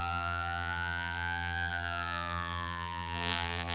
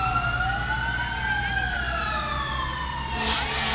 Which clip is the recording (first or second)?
second